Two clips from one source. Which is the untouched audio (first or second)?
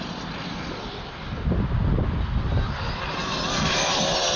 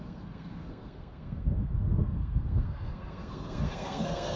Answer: first